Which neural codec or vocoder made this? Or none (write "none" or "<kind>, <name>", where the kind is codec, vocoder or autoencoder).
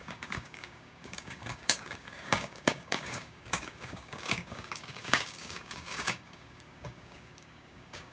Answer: codec, DAC